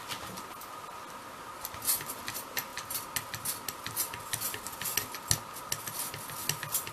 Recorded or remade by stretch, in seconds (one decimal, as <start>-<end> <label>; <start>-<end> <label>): 0.0-6.9 recorded